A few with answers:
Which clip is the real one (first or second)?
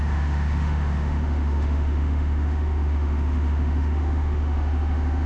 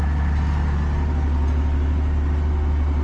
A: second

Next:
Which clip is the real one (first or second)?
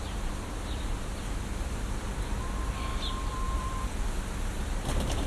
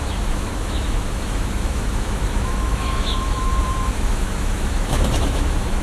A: first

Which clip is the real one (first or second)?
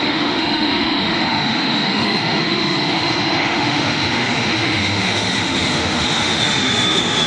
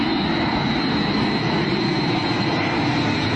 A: second